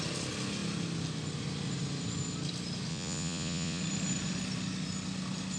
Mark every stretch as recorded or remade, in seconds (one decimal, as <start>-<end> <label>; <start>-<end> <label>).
0.0-2.9 recorded; 2.9-3.8 remade; 3.8-5.6 recorded